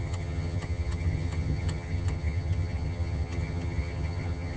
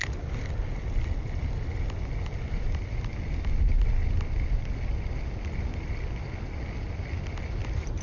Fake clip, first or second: first